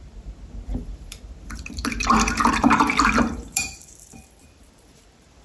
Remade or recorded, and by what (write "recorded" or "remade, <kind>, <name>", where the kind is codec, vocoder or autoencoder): remade, vocoder, BigVGAN v2